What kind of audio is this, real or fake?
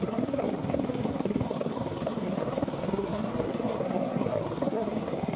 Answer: fake